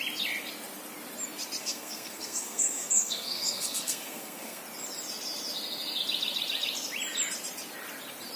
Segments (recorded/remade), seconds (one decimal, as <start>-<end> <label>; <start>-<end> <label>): 0.0-1.6 recorded; 1.6-4.6 remade; 4.6-8.4 recorded